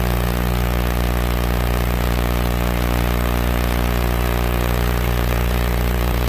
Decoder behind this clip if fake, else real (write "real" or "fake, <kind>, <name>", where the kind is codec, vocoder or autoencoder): fake, vocoder, Vocos